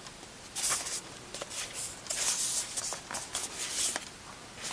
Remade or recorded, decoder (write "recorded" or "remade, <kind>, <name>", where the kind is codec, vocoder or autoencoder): recorded